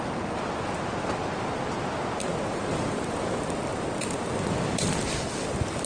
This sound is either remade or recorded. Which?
recorded